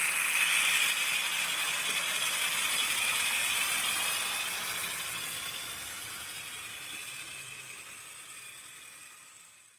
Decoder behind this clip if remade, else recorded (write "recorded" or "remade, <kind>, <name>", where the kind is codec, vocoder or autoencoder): recorded